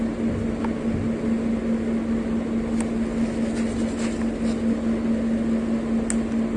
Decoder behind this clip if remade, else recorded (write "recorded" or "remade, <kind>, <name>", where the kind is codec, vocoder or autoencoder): recorded